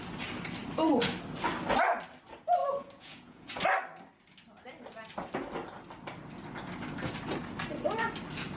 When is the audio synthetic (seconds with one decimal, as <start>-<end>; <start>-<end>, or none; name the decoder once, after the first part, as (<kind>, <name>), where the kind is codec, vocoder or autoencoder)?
2.6-3.6 (vocoder, Vocos)